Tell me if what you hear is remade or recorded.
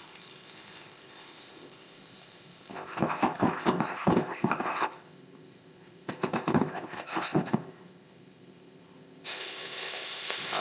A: remade